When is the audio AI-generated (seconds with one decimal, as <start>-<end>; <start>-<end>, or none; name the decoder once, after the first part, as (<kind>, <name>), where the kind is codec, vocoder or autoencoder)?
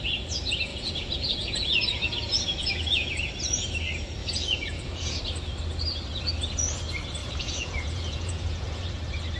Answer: 0.7-3.1 (vocoder, Vocos); 4.2-5.2; 7.2-8.9